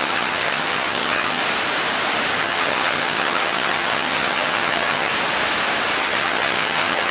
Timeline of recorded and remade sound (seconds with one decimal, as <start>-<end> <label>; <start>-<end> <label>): 0.0-1.4 remade; 1.4-2.4 recorded; 2.4-5.1 remade; 5.1-6.0 recorded; 6.0-7.1 remade

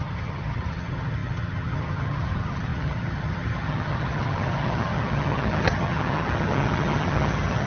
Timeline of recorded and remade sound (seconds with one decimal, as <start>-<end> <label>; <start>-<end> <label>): 0.0-7.7 remade

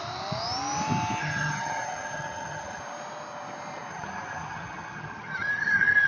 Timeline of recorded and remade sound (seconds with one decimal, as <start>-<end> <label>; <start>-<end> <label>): 0.0-1.2 recorded; 1.2-2.8 remade; 2.8-3.9 recorded; 3.9-6.1 remade

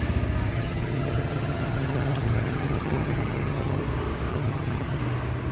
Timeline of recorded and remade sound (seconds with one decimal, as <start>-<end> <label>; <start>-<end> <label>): 0.0-0.5 recorded; 0.5-3.8 remade; 3.8-4.3 recorded; 4.3-5.0 remade; 5.0-5.5 recorded

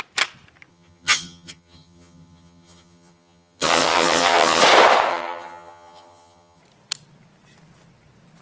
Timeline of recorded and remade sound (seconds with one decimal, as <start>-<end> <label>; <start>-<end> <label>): 0.0-0.7 recorded; 0.7-4.6 remade; 4.6-5.1 recorded; 5.1-6.6 remade; 6.6-8.4 recorded

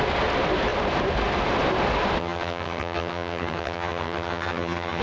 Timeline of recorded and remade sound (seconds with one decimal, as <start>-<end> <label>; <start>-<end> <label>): 0.0-2.2 recorded; 2.2-5.0 remade

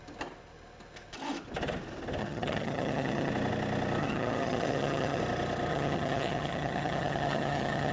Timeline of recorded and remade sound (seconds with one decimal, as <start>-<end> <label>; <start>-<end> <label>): 0.0-2.2 recorded; 2.2-3.3 remade; 3.3-4.0 recorded; 4.0-5.2 remade; 5.2-5.7 recorded; 5.7-7.9 remade